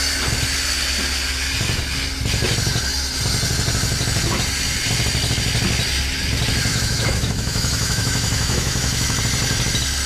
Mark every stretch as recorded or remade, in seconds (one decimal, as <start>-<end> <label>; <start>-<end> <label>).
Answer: 0.0-6.7 recorded; 6.7-9.2 remade; 9.2-10.1 recorded